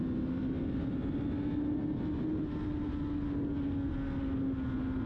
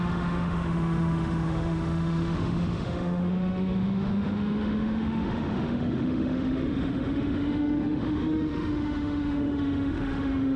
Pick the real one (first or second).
first